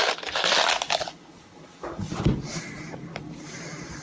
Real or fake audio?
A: real